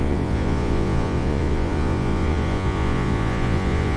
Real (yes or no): no